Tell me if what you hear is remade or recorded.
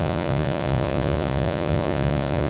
remade